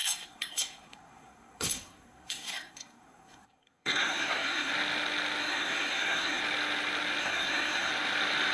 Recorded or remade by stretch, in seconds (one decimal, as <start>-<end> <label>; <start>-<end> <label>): 0.0-4.7 remade; 4.7-5.4 recorded; 5.4-6.4 remade; 6.4-7.2 recorded; 7.2-7.9 remade; 7.9-8.5 recorded